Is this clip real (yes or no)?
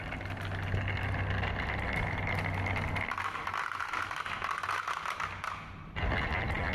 yes